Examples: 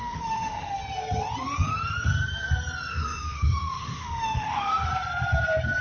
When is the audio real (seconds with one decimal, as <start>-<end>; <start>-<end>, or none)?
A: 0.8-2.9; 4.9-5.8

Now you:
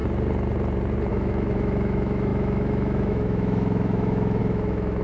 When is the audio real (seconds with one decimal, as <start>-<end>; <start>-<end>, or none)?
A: 0.0-1.1

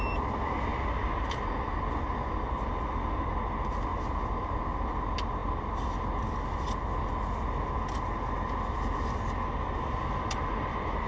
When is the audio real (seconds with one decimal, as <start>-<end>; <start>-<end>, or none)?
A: 0.0-11.1

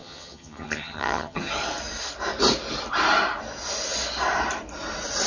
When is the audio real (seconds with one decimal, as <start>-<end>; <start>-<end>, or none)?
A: 1.5-5.3